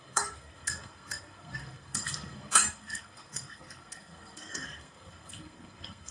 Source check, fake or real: fake